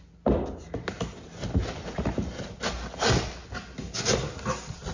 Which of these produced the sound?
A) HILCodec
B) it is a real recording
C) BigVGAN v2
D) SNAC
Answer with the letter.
B